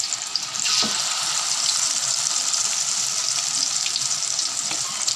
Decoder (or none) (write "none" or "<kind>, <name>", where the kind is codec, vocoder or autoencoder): vocoder, BigVGAN v2